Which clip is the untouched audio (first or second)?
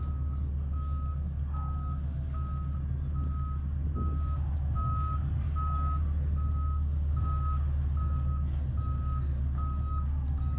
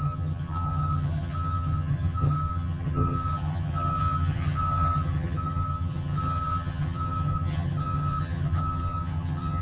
first